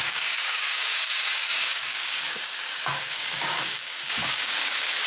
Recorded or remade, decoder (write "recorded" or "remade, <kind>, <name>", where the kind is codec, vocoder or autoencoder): remade, codec, DAC